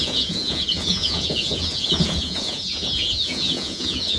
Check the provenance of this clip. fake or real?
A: fake